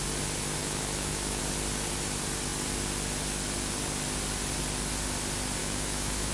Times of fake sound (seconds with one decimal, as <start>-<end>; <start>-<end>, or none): 0.6-1.4; 5.6-6.3